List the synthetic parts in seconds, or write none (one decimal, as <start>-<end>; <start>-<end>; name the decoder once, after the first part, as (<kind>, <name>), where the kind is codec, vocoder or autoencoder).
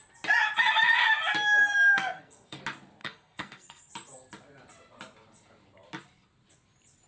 1.6-2.6 (codec, SNAC); 3.0-3.9